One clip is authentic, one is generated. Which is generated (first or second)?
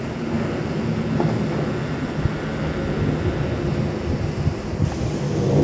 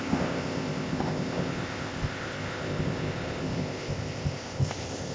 second